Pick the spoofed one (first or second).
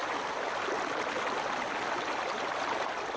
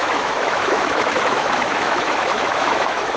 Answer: second